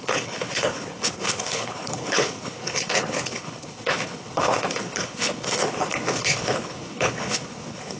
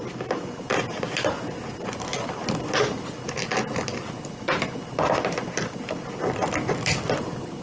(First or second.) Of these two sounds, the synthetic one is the first